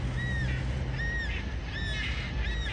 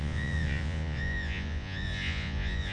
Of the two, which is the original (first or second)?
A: first